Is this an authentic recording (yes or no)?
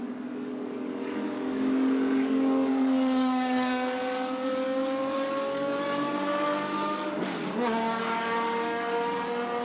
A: no